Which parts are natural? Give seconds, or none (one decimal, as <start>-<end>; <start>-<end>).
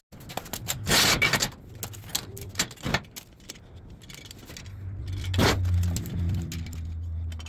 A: 0.0-7.5